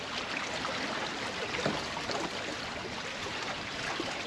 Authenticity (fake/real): real